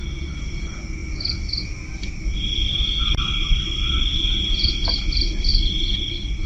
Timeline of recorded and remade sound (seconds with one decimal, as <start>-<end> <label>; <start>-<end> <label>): 0.0-1.0 recorded; 1.0-4.7 remade; 4.7-6.5 recorded

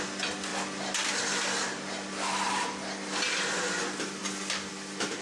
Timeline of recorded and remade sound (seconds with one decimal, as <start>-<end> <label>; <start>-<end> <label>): 0.0-5.2 recorded

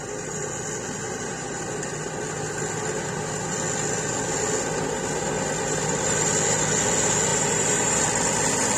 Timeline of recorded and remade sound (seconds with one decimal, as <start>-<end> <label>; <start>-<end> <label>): 0.0-1.0 recorded; 1.0-1.6 remade; 1.6-7.3 recorded; 7.3-8.0 remade; 8.0-8.8 recorded

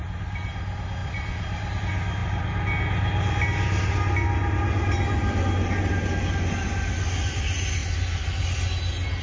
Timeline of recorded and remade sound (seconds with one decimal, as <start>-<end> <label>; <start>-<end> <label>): 0.0-1.0 recorded; 1.0-1.8 remade; 1.8-9.2 recorded

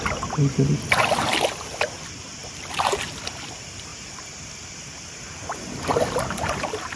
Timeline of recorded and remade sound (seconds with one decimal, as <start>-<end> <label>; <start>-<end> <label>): 0.0-2.4 recorded; 2.4-3.0 remade; 3.0-3.9 recorded; 3.9-5.4 remade; 5.4-7.0 recorded

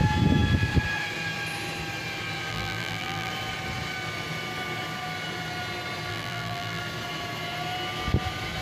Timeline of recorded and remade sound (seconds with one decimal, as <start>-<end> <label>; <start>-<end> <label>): 0.0-2.5 recorded; 2.5-3.3 remade; 3.3-6.1 recorded; 6.1-6.8 remade; 6.8-8.6 recorded

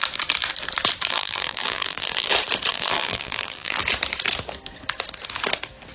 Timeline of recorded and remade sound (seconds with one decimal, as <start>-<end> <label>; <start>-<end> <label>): 0.0-1.1 recorded; 1.1-2.3 remade; 2.3-2.7 recorded; 2.7-3.8 remade; 3.8-5.9 recorded

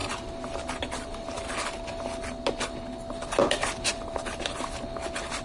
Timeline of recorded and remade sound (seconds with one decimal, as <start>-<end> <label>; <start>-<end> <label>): 0.0-3.4 recorded; 3.4-4.6 remade; 4.6-5.4 recorded